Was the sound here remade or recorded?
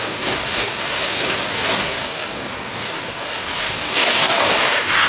remade